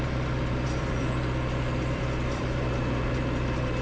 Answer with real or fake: fake